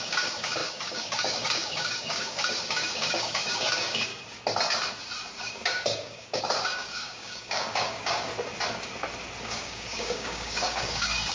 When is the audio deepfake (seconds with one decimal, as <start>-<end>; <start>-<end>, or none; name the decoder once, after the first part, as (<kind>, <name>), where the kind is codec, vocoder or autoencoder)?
0.0-4.1 (codec, DAC); 5.4-8.3; 9.4-11.3